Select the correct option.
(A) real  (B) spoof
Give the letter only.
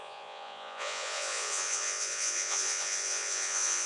B